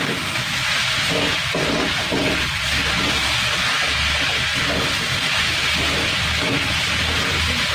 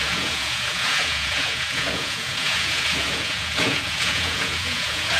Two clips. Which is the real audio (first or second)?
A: first